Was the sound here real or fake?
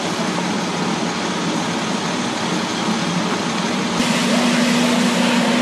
real